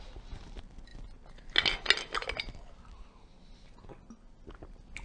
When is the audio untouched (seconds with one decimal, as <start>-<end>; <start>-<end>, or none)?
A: 0.0-5.0

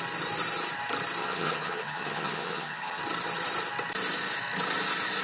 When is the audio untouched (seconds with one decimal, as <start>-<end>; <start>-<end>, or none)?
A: 0.0-1.2; 3.0-5.2